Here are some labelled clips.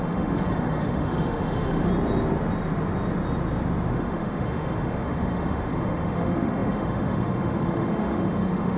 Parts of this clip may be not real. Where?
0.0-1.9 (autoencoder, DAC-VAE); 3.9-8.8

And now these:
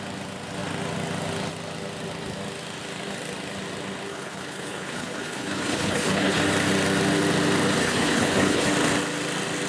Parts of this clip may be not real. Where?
4.1-6.4 (codec, HILCodec); 7.8-8.7

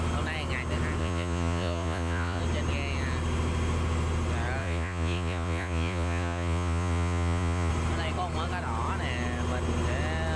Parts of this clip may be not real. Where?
1.0-2.4 (vocoder, Vocos); 4.6-7.7

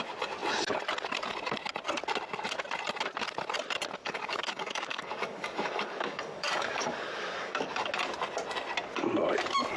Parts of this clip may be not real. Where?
4.0-7.9 (codec, DAC)

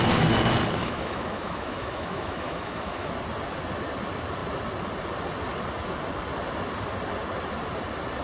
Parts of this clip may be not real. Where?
0.8-3.1 (autoencoder, DAC-VAE)

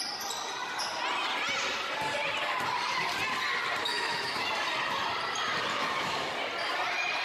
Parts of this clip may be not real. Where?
3.8-4.5 (autoencoder, DAC-VAE); 5.7-6.3